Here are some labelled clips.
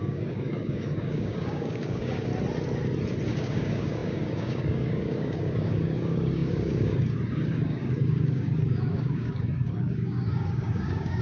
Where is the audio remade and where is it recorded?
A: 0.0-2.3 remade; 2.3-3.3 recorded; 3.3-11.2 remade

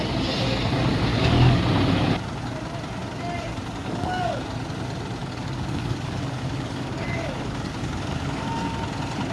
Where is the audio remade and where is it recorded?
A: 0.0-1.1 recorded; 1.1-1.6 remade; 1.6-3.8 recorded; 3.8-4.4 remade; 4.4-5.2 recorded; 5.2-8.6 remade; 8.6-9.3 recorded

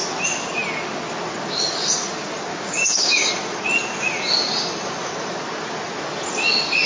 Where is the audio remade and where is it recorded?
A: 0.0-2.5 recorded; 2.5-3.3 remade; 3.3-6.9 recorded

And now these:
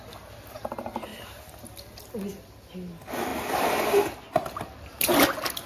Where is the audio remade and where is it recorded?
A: 0.0-5.7 recorded

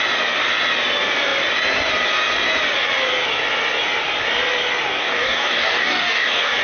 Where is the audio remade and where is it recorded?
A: 0.0-5.0 recorded; 5.0-6.6 remade

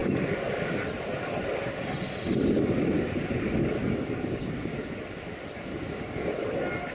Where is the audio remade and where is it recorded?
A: 0.0-0.8 remade; 0.8-3.8 recorded; 3.8-4.9 remade; 4.9-5.7 recorded; 5.7-6.3 remade; 6.3-6.9 recorded

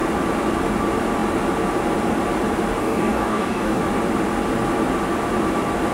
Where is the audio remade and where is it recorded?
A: 0.0-2.8 recorded; 2.8-3.8 remade; 3.8-5.9 recorded